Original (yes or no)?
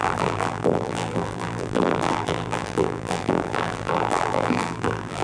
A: no